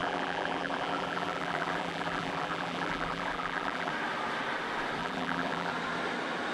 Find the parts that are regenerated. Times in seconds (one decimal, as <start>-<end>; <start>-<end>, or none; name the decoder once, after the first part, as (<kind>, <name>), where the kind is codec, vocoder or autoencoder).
0.0-3.9 (vocoder, BigVGAN v2); 5.0-5.7